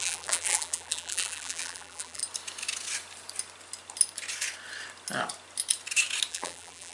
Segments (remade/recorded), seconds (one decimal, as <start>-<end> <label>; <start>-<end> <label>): 0.0-2.2 remade; 2.2-6.3 recorded; 6.3-6.9 remade